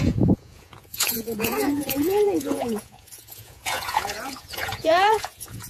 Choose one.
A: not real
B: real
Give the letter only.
A